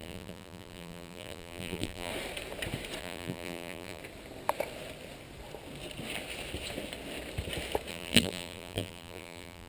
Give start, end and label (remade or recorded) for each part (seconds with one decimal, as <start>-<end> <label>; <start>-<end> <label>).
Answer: 0.0-2.1 remade; 2.1-3.0 recorded; 3.0-4.0 remade; 4.0-7.9 recorded; 7.9-9.7 remade